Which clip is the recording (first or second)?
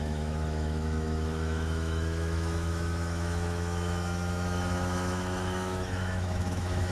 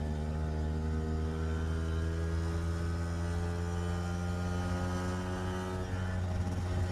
second